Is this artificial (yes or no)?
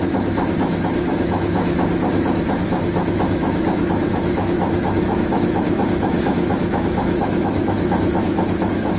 yes